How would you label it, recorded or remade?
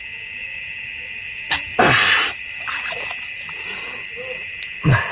recorded